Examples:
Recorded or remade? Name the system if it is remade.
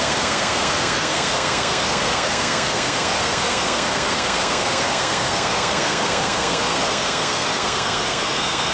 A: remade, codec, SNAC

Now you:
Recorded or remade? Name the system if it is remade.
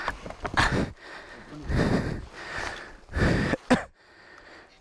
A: recorded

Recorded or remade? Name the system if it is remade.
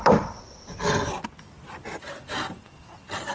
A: recorded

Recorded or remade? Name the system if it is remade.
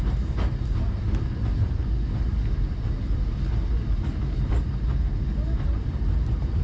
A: recorded